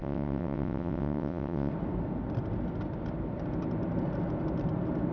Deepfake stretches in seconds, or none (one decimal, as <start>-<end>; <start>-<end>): 0.0-1.7